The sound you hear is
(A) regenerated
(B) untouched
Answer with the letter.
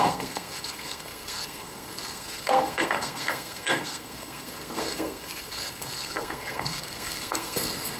A